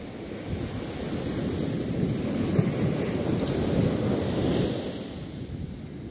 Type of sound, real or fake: real